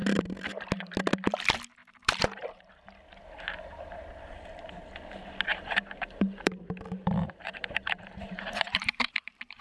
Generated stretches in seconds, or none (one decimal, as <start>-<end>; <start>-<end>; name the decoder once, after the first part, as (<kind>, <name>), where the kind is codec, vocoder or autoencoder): 1.8-2.7 (vocoder, BigVGAN v2); 5.5-9.6